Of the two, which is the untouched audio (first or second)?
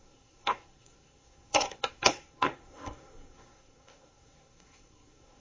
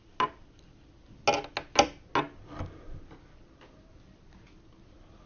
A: second